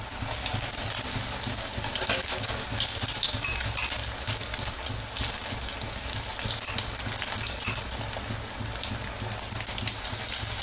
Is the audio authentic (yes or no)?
yes